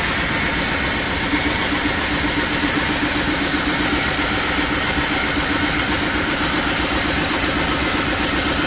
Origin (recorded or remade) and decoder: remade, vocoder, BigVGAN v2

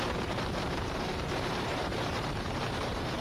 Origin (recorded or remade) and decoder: remade, vocoder, BigVGAN v2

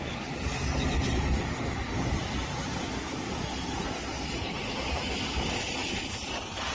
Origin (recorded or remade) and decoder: recorded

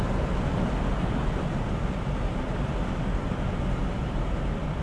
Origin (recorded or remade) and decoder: recorded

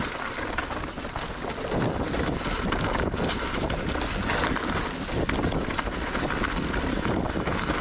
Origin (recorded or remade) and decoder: recorded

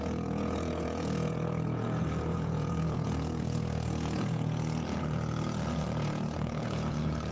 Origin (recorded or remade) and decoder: remade, vocoder, Vocos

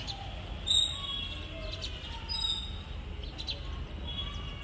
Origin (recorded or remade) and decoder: recorded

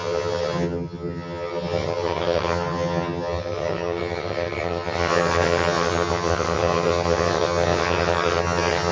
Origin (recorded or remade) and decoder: remade, vocoder, HiFi-GAN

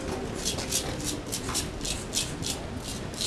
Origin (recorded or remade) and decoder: recorded